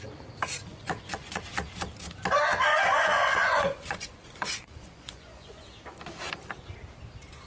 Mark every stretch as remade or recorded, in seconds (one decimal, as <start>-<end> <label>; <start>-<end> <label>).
0.0-0.7 recorded; 0.7-1.4 remade; 1.4-2.7 recorded; 2.7-6.0 remade; 6.0-7.5 recorded